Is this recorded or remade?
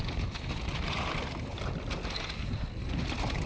recorded